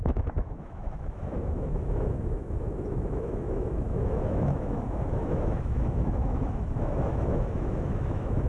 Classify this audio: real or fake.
fake